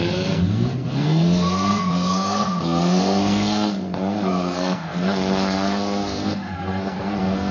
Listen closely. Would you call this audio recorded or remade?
remade